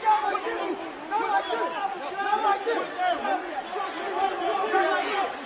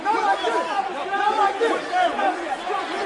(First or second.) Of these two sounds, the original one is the first